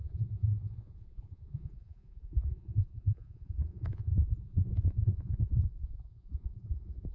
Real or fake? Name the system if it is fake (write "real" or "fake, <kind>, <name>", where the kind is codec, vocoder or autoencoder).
fake, vocoder, Vocos